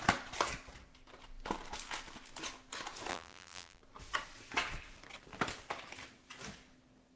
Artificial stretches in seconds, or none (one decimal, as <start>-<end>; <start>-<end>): 3.1-3.8